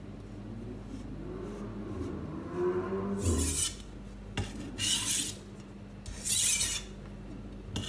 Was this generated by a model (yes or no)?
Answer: no